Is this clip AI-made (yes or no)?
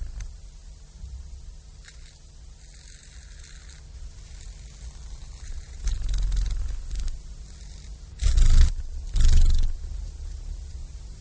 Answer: no